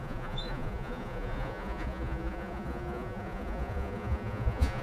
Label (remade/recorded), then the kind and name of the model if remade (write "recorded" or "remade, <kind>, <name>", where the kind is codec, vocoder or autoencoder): remade, vocoder, Vocos